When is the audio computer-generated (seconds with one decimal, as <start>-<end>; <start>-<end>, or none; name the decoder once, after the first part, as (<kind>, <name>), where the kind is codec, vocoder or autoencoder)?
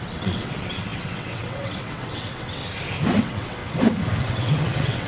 0.0-2.6 (vocoder, WaveNeXt); 3.2-3.6; 4.2-5.1